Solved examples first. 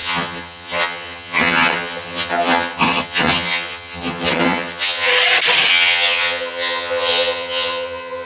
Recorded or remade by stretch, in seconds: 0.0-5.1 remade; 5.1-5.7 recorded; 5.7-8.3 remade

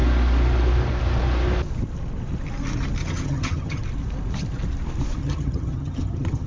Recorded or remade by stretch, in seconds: 0.0-3.0 recorded; 3.0-3.8 remade; 3.8-5.2 recorded; 5.2-6.5 remade